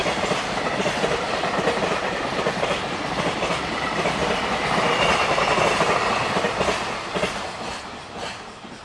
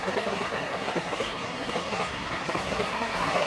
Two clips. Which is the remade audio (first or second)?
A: second